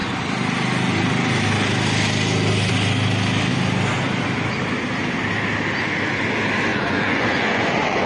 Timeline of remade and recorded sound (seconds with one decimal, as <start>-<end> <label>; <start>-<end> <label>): 0.0-6.7 recorded; 6.7-8.1 remade